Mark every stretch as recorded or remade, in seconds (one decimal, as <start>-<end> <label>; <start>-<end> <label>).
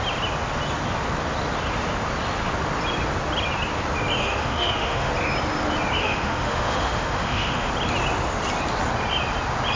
0.0-4.2 recorded; 4.2-5.1 remade; 5.1-6.0 recorded; 6.0-7.7 remade; 7.7-9.8 recorded